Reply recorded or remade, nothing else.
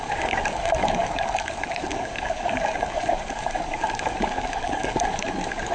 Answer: remade